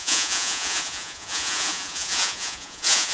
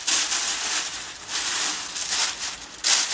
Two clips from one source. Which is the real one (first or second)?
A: second